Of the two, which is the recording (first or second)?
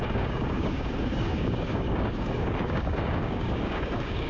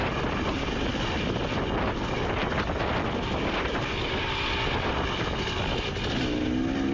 second